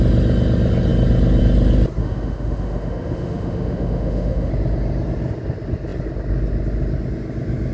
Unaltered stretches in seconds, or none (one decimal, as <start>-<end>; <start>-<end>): 0.0-2.0; 4.5-7.7